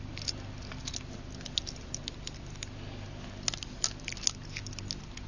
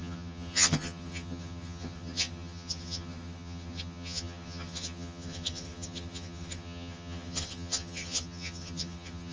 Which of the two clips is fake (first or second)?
second